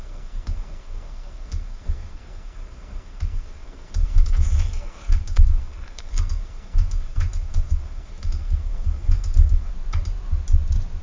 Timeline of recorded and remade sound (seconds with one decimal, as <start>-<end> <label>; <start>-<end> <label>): 0.0-9.7 remade; 9.7-11.0 recorded